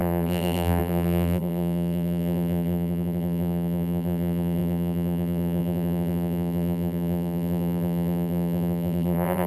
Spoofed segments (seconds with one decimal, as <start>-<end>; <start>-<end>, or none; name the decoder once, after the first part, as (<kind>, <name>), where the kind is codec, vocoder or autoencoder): 0.0-9.5 (vocoder, BigVGAN v2)